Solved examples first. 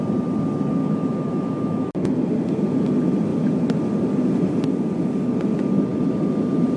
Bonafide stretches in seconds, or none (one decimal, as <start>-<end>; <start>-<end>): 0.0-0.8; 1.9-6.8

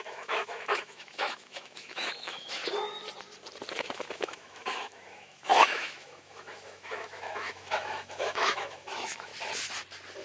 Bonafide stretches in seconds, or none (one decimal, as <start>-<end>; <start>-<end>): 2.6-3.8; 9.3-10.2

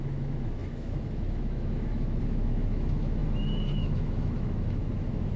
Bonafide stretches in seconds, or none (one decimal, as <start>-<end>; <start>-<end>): none

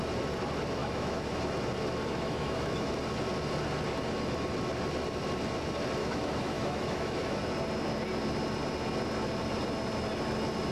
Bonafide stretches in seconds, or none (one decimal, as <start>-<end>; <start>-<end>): 0.0-0.8; 1.4-2.1; 2.9-6.0; 7.4-10.7

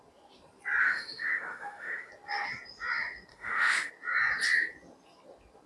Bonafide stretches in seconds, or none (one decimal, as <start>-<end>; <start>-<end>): 0.0-0.8; 2.1-3.3; 3.9-5.7

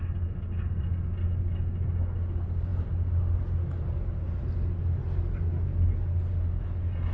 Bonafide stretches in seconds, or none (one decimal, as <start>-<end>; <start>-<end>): 0.0-7.1